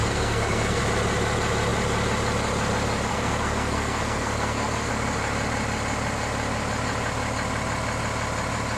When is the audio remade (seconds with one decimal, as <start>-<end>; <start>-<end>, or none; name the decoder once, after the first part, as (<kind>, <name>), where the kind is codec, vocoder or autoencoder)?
0.0-0.8 (codec, SNAC); 3.1-4.9